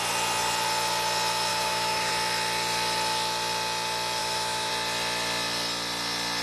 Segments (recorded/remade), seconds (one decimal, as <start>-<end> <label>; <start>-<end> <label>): 0.0-1.5 recorded; 1.5-2.1 remade; 2.1-4.2 recorded; 4.2-4.7 remade; 4.7-6.4 recorded